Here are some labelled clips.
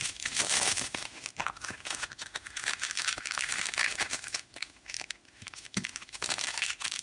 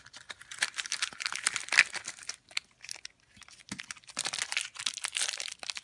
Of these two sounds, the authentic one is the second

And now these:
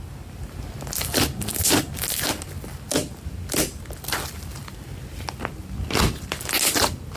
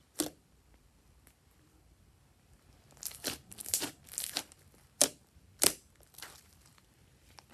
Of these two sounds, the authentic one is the first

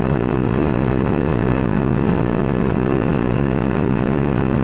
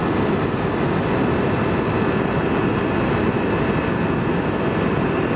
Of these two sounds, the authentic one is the second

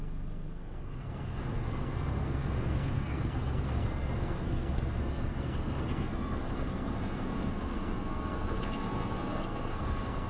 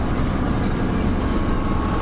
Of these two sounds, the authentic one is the second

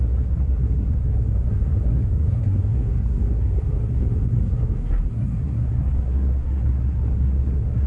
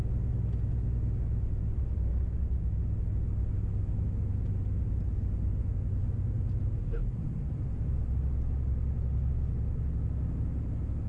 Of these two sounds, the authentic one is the second